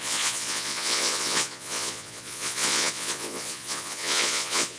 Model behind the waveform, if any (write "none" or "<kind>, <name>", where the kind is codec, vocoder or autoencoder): vocoder, Vocos